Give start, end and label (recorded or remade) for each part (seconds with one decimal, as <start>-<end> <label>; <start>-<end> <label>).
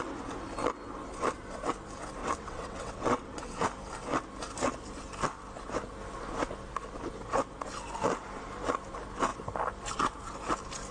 0.0-2.2 recorded; 2.2-3.6 remade; 3.6-10.9 recorded